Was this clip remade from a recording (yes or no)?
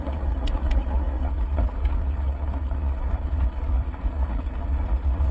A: yes